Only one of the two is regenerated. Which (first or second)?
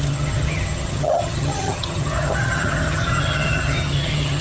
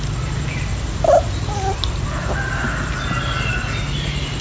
first